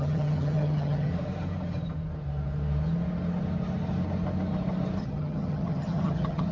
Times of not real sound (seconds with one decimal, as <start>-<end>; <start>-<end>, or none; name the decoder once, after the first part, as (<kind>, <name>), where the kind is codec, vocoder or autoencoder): 0.0-1.1 (vocoder, HiFi-GAN); 5.0-6.5